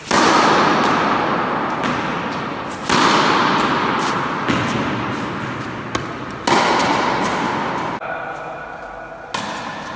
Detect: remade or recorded recorded